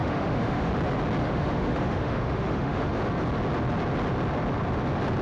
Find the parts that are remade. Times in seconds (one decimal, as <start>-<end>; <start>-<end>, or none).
0.0-0.7; 1.2-2.9